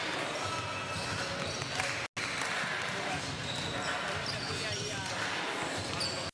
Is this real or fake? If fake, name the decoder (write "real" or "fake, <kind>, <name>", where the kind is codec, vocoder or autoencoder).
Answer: real